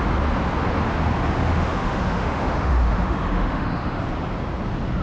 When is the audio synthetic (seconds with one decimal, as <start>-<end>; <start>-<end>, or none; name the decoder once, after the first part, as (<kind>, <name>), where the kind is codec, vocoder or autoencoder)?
1.5-4.0 (autoencoder, DAC-VAE)